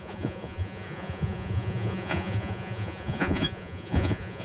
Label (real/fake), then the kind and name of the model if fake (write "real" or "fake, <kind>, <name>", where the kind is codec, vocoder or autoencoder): fake, vocoder, Vocos